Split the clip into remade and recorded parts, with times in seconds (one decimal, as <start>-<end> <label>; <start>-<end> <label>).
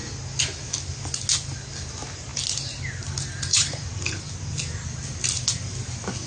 0.0-3.5 recorded; 3.5-4.2 remade; 4.2-6.3 recorded